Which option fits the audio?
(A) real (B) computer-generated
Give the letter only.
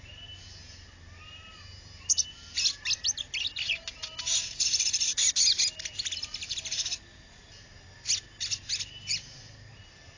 A